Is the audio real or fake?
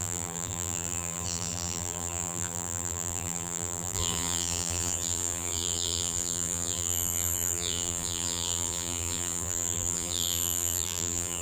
fake